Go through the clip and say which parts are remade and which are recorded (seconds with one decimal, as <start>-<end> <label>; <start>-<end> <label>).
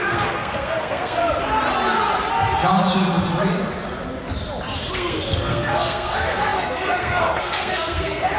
0.0-1.2 remade; 1.2-4.9 recorded; 4.9-8.4 remade